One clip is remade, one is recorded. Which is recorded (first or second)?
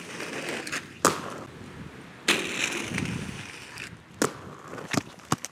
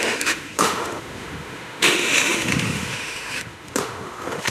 first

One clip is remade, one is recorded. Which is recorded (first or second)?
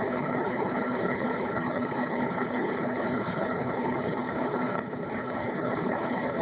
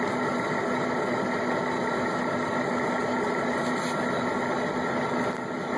second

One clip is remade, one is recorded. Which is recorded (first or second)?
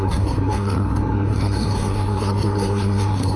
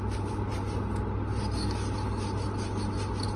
second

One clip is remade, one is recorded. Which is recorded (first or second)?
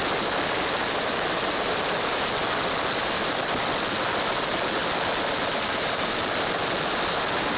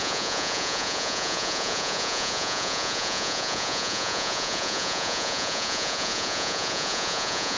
first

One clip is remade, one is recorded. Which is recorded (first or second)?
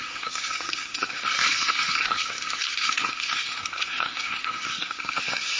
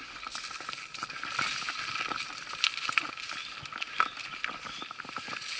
second